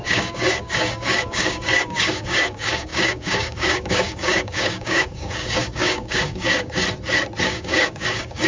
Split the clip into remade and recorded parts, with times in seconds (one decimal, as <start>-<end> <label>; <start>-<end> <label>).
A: 0.0-6.8 remade; 6.8-7.4 recorded; 7.4-8.5 remade

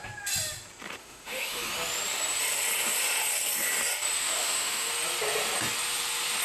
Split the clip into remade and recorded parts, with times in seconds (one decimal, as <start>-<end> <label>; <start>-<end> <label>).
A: 0.0-1.0 recorded; 1.0-1.7 remade; 1.7-4.2 recorded; 4.2-4.9 remade; 4.9-6.4 recorded

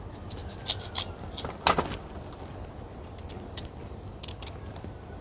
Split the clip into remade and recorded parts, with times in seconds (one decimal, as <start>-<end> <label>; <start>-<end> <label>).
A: 0.0-5.2 recorded

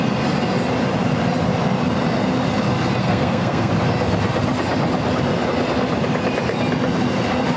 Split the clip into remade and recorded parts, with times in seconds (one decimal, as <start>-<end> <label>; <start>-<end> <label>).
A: 0.0-3.0 recorded; 3.0-3.7 remade; 3.7-7.6 recorded